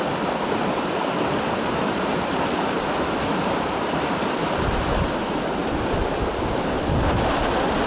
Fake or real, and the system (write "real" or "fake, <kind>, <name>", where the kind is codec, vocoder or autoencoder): real